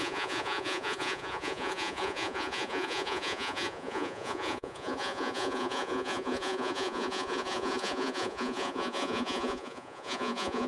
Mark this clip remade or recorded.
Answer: remade